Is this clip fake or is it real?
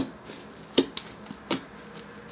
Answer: real